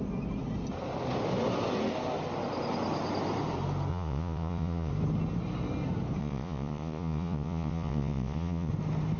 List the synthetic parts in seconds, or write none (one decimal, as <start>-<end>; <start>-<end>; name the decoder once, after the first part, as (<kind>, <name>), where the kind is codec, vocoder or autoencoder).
3.9-4.9 (vocoder, Vocos); 6.2-8.7